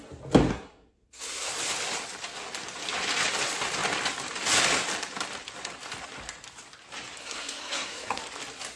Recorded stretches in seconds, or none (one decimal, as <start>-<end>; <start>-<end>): 0.0-0.5; 1.5-7.2; 8.2-8.8